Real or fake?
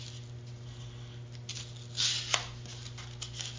real